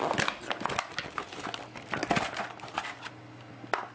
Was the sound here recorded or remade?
recorded